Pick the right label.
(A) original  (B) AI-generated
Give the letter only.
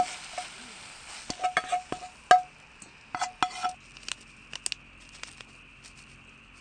A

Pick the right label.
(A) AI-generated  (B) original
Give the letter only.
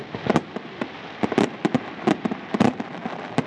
A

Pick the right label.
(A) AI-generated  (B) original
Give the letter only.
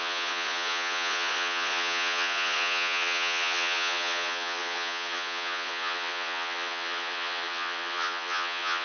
A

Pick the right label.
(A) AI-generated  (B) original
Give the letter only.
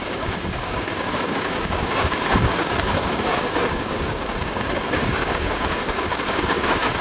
A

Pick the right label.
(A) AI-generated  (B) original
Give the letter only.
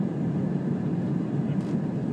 B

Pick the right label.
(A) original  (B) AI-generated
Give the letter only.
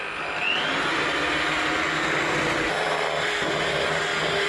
A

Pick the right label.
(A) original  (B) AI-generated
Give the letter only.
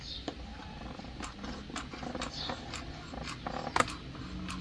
A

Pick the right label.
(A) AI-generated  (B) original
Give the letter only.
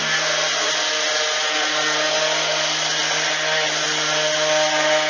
B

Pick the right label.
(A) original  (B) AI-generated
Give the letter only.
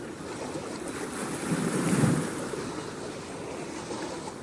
A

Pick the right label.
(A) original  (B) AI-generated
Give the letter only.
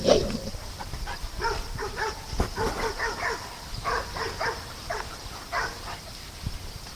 A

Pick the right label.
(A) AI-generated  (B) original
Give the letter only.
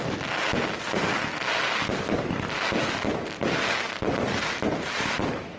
B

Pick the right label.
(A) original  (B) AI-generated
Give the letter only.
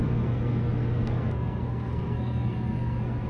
B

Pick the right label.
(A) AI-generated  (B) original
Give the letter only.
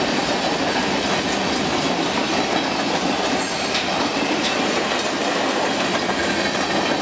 B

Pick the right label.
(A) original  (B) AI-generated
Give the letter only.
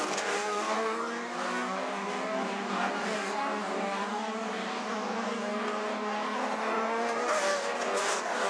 B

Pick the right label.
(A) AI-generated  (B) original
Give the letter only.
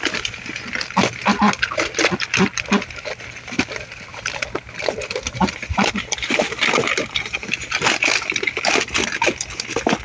B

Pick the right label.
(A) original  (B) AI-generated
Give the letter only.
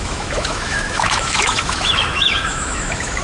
B